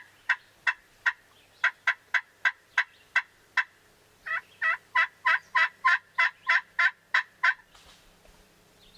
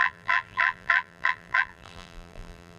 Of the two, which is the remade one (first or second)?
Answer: second